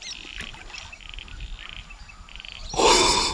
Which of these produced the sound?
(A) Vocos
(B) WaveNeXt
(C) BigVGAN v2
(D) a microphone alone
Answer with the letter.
D